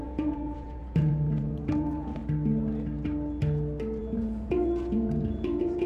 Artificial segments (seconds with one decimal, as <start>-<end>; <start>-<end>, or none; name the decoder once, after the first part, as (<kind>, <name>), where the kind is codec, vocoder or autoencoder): 0.0-2.2 (vocoder, Vocos); 4.0-5.9